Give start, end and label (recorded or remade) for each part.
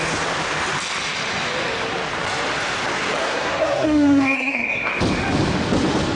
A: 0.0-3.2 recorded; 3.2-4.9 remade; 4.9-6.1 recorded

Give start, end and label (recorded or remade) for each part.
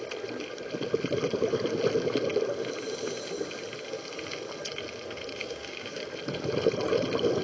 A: 0.0-5.4 recorded; 5.4-6.0 remade; 6.0-7.4 recorded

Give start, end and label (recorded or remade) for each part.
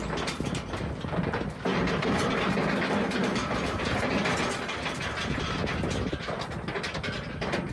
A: 0.0-1.7 recorded; 1.7-2.5 remade; 2.5-3.2 recorded; 3.2-4.1 remade; 4.1-7.7 recorded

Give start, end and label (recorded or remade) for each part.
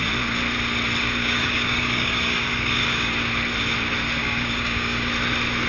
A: 0.0-1.2 recorded; 1.2-3.1 remade; 3.1-4.2 recorded; 4.2-5.1 remade; 5.1-5.7 recorded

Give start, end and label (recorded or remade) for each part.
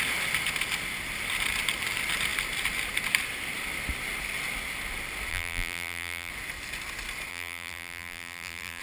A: 0.0-5.3 recorded; 5.3-6.3 remade; 6.3-7.3 recorded; 7.3-8.8 remade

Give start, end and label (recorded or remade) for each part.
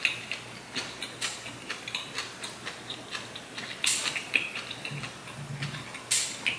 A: 0.0-6.6 recorded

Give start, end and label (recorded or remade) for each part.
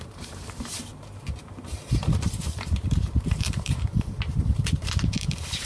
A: 0.0-5.7 remade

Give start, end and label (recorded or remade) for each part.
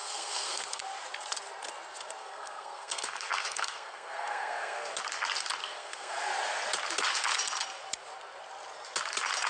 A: 0.0-0.8 remade; 0.8-2.2 recorded; 2.2-5.0 remade; 5.0-5.6 recorded; 5.6-6.2 remade; 6.2-9.5 recorded